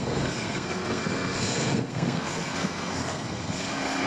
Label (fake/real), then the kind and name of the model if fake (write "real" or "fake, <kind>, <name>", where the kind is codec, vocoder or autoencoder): fake, codec, SNAC